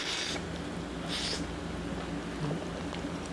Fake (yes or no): no